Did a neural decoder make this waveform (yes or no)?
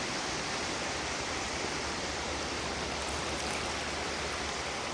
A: yes